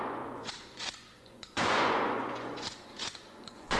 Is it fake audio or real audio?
fake